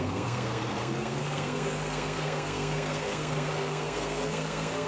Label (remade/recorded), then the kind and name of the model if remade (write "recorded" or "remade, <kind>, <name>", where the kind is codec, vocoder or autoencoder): remade, codec, SNAC